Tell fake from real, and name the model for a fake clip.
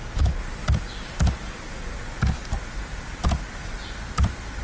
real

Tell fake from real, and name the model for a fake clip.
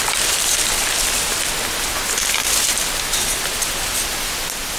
real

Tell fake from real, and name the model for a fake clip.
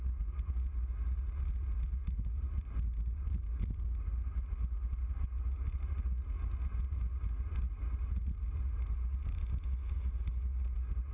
real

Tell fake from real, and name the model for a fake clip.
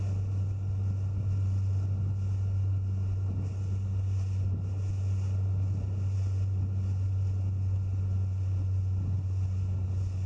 real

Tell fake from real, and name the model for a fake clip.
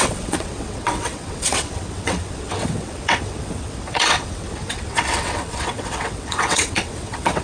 fake, vocoder, WaveNeXt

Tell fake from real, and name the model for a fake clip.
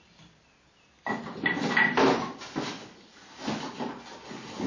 real